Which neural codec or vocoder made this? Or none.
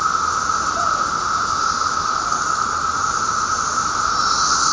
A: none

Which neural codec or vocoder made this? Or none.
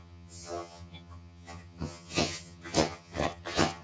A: vocoder, HiFi-GAN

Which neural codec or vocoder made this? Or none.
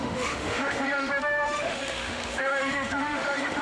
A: autoencoder, DAC-VAE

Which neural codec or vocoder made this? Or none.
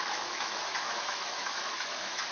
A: autoencoder, DAC-VAE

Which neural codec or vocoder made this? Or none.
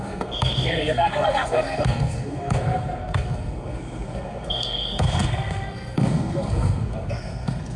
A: codec, SNAC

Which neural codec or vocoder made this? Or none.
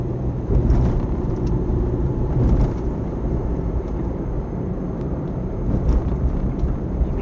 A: vocoder, BigVGAN v2